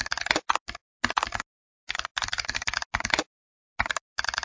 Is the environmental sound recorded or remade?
recorded